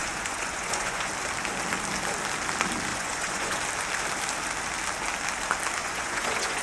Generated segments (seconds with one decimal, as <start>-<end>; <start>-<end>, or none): 0.0-1.1; 2.9-3.6; 5.8-6.6